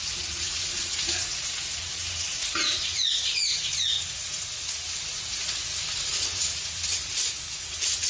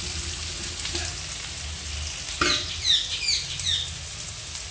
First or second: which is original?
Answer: second